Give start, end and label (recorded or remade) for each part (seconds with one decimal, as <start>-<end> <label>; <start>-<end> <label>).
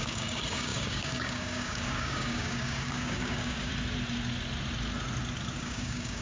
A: 0.0-3.7 remade; 3.7-5.6 recorded; 5.6-6.2 remade